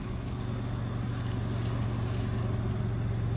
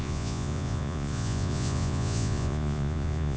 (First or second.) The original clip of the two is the first